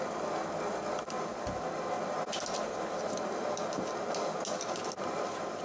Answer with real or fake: real